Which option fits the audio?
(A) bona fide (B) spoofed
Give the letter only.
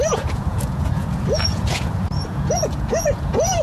B